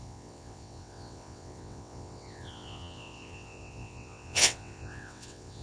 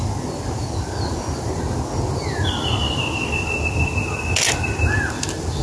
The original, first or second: second